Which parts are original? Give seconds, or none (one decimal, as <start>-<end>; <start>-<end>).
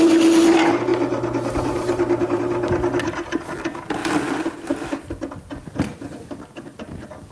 0.0-0.9; 2.4-7.3